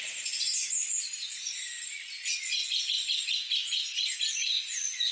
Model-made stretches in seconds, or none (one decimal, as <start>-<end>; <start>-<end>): 0.0-2.5; 4.4-5.1

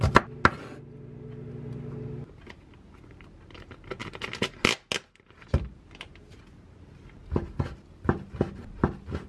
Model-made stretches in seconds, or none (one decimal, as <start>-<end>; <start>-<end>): none